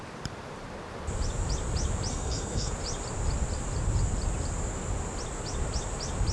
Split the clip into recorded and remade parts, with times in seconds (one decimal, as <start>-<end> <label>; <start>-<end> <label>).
0.0-2.1 recorded; 2.1-2.7 remade; 2.7-6.3 recorded